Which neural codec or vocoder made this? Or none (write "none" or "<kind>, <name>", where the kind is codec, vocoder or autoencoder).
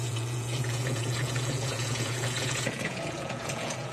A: vocoder, Vocos